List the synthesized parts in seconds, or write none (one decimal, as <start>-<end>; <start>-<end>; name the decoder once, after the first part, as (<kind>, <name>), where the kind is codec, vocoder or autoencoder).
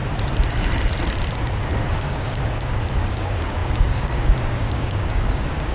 1.6-5.7 (codec, DAC)